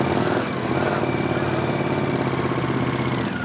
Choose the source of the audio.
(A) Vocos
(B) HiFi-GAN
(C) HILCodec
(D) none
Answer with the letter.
D